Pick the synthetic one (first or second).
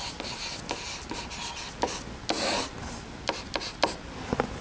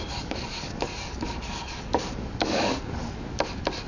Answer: second